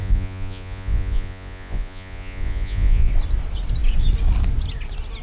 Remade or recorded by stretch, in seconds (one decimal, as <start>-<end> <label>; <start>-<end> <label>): 0.0-3.1 remade; 3.1-5.2 recorded